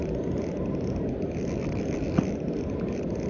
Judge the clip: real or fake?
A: real